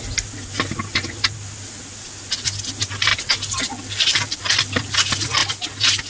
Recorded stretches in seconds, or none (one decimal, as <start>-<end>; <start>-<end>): 0.0-3.1; 4.8-6.1